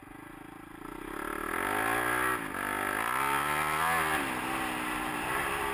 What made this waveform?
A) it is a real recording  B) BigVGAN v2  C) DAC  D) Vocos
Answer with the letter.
A